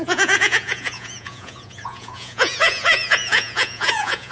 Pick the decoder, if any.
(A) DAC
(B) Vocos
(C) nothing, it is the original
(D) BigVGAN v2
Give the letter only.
B